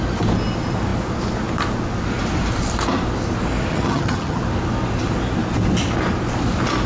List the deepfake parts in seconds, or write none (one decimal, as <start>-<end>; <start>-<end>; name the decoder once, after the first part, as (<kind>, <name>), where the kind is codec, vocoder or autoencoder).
3.7-4.4 (vocoder, HiFi-GAN)